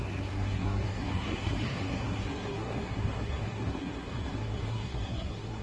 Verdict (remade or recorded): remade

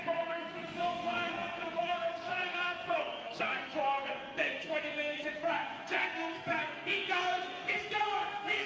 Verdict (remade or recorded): remade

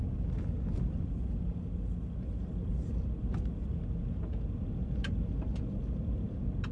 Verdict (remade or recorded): recorded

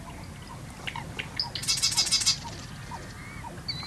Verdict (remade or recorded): recorded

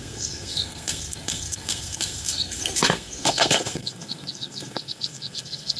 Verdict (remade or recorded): remade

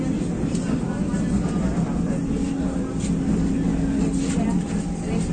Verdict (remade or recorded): recorded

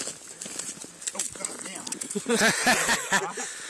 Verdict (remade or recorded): recorded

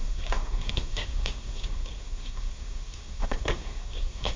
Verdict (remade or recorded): remade